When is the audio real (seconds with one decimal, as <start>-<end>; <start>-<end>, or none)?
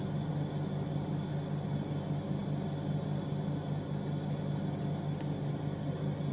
0.0-6.3